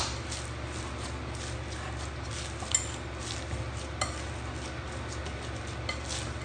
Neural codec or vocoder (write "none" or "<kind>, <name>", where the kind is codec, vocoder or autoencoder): none